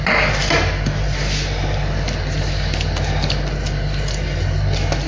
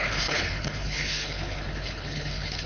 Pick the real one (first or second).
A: first